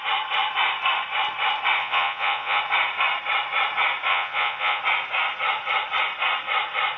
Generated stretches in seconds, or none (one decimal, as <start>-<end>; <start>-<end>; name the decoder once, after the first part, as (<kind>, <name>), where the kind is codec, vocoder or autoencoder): 1.8-2.6 (vocoder, Vocos); 4.1-4.8